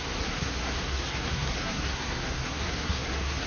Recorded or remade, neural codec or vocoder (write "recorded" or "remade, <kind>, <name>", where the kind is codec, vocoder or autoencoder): remade, codec, SNAC